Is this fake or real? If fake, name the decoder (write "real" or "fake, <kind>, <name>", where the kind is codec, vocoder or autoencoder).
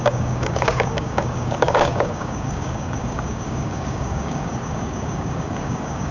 fake, codec, DAC